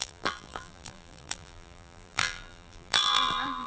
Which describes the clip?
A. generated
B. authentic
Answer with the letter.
A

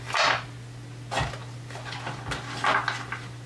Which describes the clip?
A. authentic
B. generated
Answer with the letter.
A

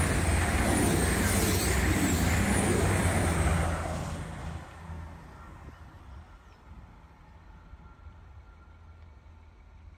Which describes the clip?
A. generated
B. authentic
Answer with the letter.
B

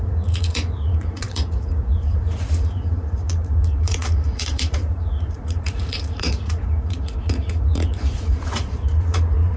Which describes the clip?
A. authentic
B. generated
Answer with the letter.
B